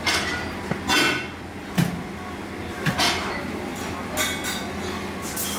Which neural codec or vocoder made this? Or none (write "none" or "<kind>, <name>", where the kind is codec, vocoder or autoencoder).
none